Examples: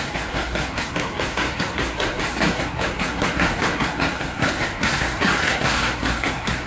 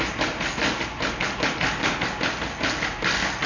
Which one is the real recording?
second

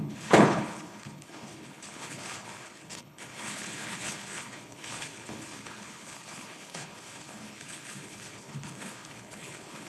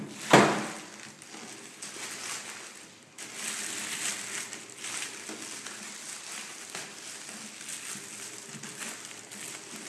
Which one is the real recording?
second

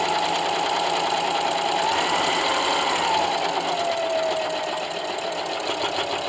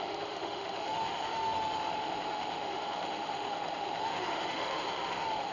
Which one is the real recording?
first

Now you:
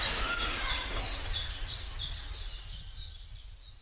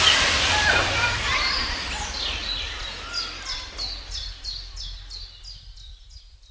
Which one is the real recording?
second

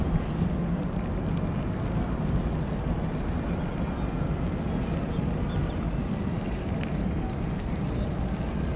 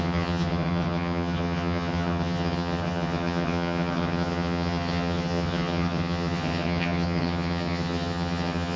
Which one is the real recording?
first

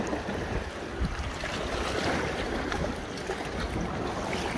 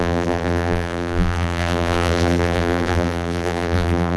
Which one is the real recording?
first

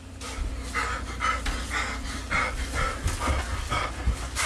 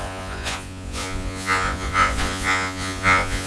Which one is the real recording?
first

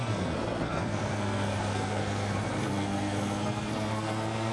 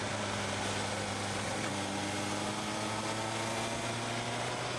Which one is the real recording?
second